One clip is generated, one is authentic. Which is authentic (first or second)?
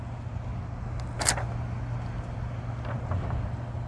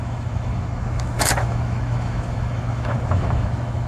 first